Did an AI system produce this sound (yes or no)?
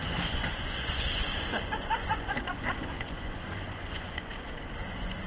yes